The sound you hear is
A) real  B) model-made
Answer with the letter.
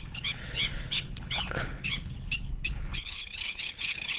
B